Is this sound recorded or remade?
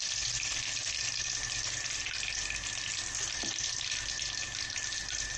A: recorded